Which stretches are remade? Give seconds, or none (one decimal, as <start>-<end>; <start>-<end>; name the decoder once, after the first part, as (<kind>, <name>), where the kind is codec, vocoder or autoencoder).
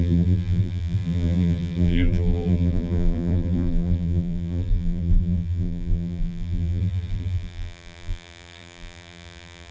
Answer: 0.0-9.7 (vocoder, BigVGAN v2)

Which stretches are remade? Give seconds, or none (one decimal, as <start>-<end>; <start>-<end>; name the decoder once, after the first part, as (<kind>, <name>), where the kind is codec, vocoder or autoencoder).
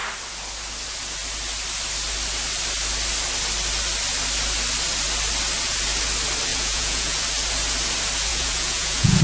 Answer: 6.5-7.2 (vocoder, Vocos); 8.3-9.2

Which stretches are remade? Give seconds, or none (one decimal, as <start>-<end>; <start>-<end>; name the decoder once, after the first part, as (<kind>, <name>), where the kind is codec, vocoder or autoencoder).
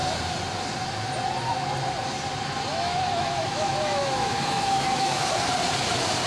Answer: 2.7-5.2 (autoencoder, DAC-VAE)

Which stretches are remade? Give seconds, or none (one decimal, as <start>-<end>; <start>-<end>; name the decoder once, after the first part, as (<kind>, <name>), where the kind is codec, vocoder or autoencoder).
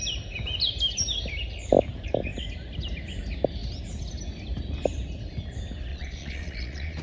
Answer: 5.9-7.0 (vocoder, Vocos)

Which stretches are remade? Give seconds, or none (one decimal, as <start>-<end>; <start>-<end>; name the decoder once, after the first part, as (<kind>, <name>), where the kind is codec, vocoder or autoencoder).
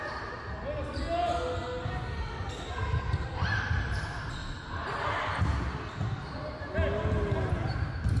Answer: none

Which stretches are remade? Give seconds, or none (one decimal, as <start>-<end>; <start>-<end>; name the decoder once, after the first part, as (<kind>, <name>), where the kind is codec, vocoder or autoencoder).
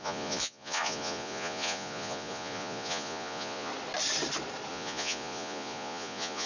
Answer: 0.0-3.7 (vocoder, Vocos); 4.7-6.5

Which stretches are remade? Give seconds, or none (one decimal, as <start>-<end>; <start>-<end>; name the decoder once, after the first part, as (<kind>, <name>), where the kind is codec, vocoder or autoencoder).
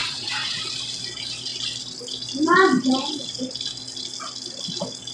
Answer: 0.0-0.6 (vocoder, WaveNeXt)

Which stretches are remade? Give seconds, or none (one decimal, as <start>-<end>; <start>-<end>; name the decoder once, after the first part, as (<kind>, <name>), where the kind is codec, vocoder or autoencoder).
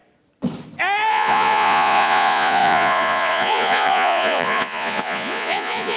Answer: 1.1-6.0 (vocoder, Vocos)